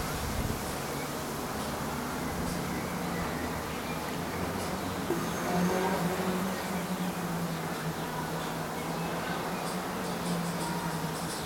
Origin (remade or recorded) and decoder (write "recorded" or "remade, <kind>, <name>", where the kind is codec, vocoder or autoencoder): recorded